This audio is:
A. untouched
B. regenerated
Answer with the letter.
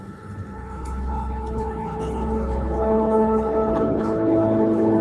B